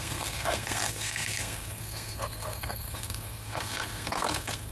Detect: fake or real fake